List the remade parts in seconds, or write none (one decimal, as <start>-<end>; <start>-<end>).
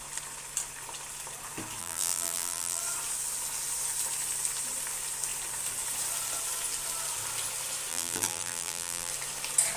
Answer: 1.8-2.8; 7.9-9.1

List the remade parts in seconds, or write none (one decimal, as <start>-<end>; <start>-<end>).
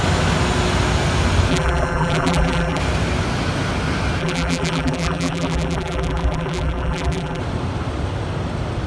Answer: 1.5-2.8; 4.2-7.4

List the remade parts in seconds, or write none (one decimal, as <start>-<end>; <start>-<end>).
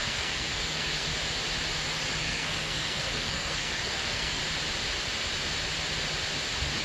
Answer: 0.0-1.1; 2.2-4.4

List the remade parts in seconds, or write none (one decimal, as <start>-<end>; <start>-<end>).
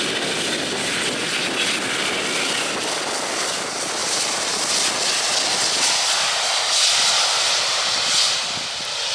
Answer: 4.0-4.6